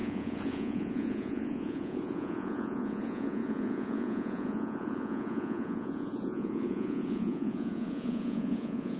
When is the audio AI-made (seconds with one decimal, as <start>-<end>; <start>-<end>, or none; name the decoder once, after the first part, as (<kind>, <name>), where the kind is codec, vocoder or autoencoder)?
0.0-9.0 (vocoder, Vocos)